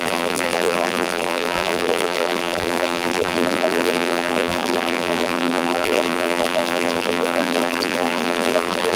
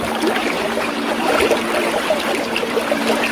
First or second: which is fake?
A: first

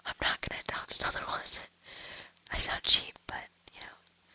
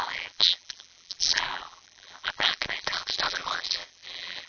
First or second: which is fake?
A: second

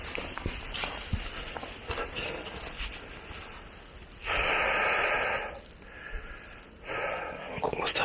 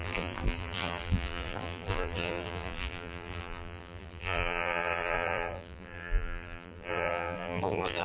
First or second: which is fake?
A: second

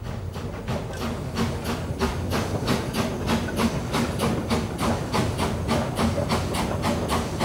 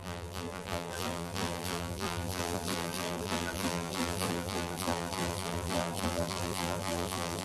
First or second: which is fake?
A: second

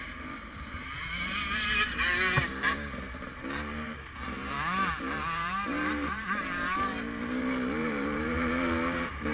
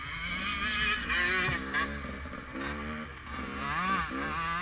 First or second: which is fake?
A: first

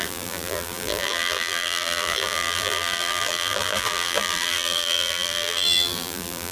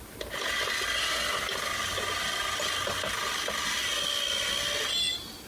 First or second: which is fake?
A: first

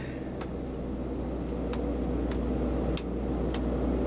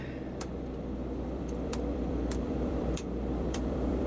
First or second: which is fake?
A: second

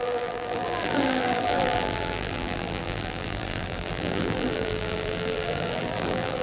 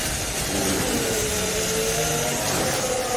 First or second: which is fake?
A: first